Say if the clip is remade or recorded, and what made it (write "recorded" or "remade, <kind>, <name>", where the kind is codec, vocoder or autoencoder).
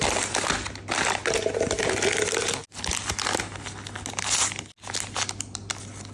recorded